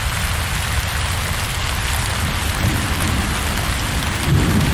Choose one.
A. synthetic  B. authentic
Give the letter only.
B